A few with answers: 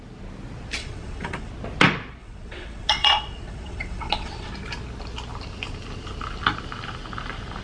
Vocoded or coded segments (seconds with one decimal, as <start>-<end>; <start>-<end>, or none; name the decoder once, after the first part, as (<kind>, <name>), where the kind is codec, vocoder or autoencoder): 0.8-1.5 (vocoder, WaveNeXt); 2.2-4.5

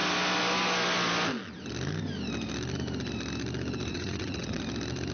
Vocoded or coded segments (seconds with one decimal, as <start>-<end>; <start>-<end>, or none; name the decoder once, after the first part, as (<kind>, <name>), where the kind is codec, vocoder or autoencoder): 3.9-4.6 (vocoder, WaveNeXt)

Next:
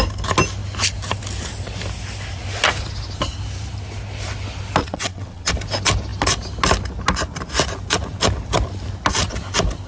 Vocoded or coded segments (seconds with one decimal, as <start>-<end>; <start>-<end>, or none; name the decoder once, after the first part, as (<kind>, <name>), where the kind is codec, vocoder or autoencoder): 4.8-5.5 (vocoder, WaveNeXt)

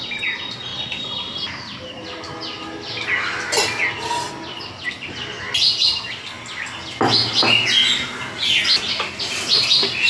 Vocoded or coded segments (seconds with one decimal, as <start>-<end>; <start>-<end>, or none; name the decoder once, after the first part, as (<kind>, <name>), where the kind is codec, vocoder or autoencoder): none

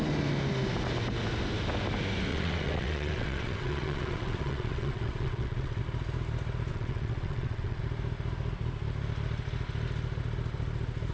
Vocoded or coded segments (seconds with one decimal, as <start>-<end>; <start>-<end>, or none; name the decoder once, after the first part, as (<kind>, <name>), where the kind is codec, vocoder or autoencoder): 2.3-5.8 (vocoder, WaveNeXt); 6.7-7.8